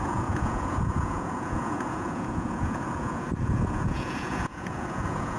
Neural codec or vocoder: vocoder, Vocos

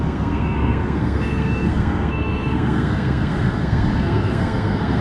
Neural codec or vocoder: codec, SNAC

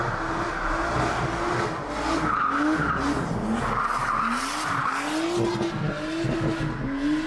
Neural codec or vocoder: none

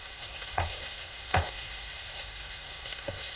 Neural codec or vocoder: codec, SNAC